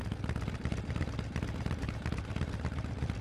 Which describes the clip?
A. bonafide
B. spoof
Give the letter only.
A